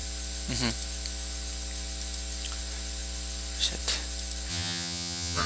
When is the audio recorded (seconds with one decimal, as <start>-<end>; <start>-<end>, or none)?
0.0-4.5